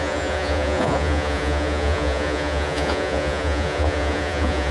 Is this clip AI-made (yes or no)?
yes